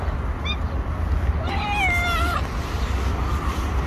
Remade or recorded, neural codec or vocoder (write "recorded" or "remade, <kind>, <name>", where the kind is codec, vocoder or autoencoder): recorded